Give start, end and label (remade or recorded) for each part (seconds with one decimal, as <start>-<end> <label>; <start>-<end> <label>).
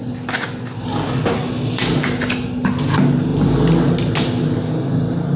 0.0-5.4 recorded